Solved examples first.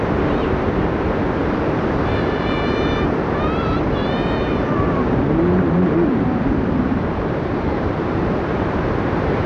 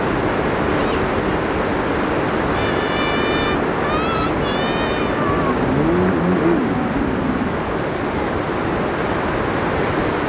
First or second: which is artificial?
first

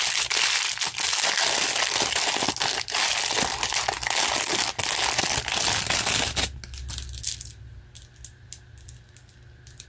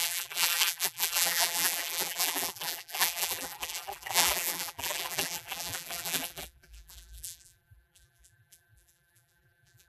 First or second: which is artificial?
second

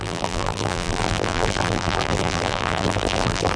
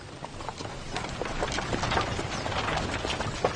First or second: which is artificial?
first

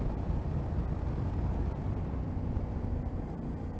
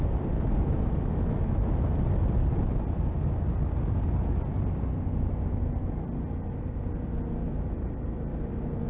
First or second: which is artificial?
first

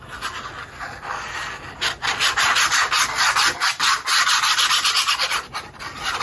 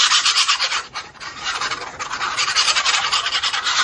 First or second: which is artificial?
second